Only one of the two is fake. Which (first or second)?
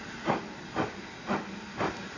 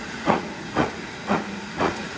second